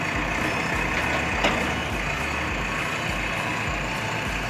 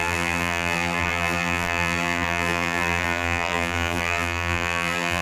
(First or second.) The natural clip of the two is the first